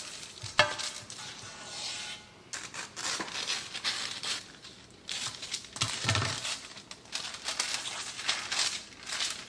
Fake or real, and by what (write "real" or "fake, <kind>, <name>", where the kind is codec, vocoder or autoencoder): real